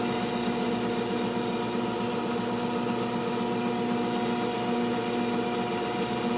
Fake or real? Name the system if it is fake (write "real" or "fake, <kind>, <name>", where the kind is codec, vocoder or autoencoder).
real